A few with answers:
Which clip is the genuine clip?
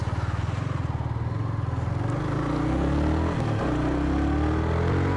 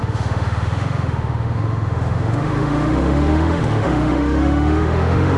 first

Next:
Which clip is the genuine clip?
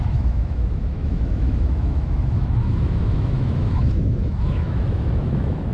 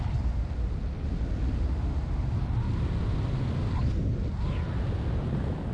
second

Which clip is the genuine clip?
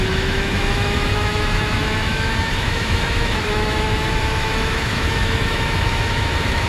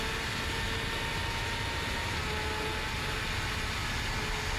second